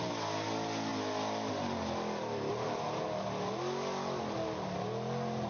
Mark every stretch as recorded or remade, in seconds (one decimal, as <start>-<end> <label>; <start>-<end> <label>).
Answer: 0.0-5.5 recorded